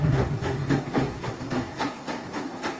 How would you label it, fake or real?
fake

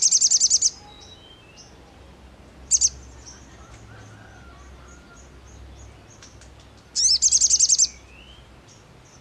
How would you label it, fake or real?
real